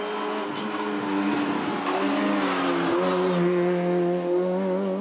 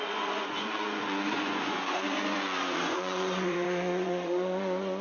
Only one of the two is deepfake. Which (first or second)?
second